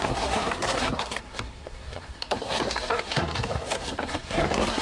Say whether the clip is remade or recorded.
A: remade